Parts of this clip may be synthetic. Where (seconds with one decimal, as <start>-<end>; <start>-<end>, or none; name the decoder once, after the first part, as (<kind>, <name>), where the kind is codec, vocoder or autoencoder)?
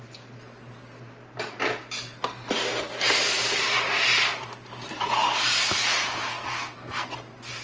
6.3-7.1 (codec, SNAC)